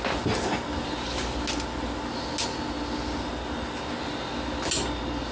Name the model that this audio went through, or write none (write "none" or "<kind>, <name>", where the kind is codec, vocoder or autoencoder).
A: none